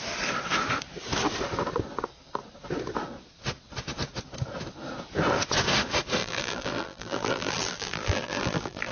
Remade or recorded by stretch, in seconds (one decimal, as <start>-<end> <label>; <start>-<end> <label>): 0.0-6.2 recorded; 6.2-8.9 remade